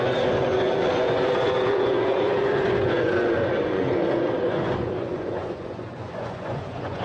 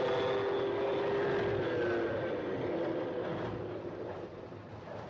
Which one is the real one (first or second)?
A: second